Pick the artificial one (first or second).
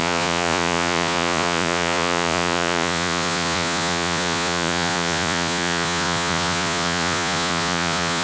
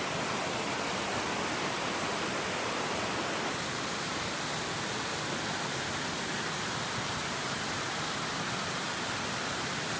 first